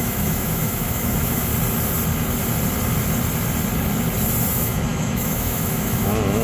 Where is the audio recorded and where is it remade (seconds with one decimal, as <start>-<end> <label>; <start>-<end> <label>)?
0.0-1.5 remade; 1.5-4.5 recorded; 4.5-6.4 remade